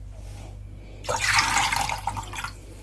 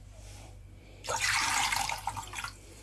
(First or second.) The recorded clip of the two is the first